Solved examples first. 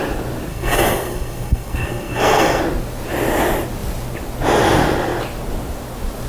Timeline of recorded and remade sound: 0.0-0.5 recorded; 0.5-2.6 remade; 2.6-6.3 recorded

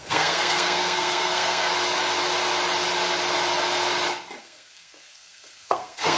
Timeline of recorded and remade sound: 0.0-1.7 remade; 1.7-4.4 recorded; 4.4-6.2 remade

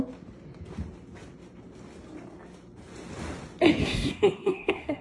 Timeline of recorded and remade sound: 0.0-3.8 recorded; 3.8-5.0 remade

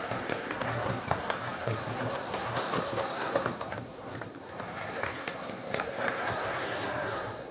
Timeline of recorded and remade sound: 0.0-7.5 remade

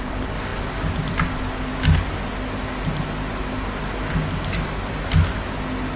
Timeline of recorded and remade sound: 0.0-6.0 recorded

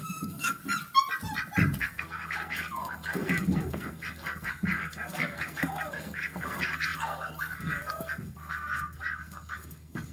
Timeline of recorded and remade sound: 0.0-0.6 remade; 0.6-1.8 recorded; 1.8-10.1 remade

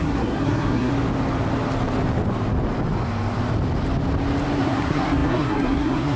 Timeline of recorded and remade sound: 0.0-0.9 remade; 0.9-4.6 recorded; 4.6-6.2 remade